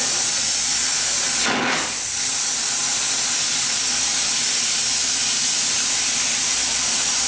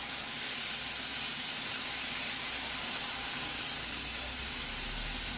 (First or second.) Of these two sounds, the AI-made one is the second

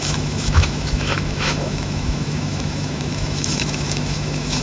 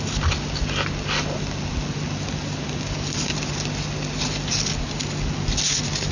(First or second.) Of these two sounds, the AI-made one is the first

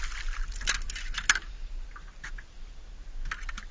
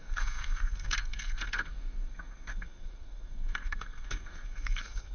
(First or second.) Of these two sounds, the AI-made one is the second